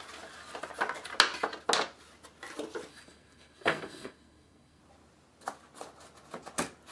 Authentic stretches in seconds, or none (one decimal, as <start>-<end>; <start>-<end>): 0.0-2.9; 4.8-6.9